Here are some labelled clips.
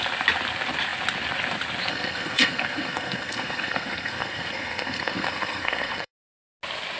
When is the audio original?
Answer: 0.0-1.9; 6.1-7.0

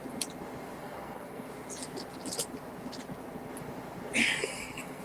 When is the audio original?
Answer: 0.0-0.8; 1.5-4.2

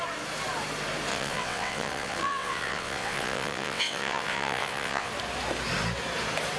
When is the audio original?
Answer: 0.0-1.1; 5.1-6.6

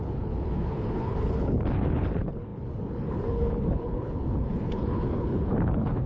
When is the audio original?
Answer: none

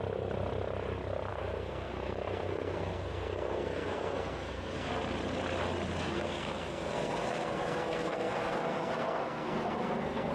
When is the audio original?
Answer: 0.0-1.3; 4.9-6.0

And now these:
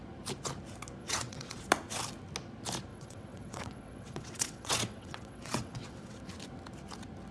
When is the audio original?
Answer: 0.0-1.0; 1.6-2.9; 6.2-7.3